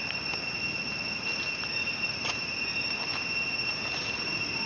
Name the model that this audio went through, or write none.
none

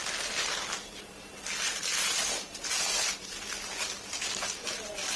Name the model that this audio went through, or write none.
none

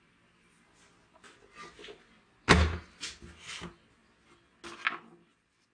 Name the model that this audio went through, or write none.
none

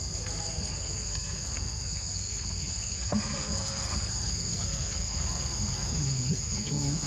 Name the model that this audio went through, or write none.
codec, SNAC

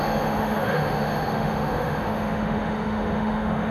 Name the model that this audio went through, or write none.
autoencoder, DAC-VAE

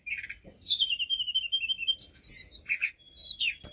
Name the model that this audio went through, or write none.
none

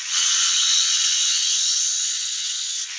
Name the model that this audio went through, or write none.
vocoder, WaveNeXt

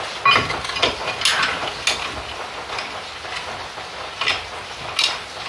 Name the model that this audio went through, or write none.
none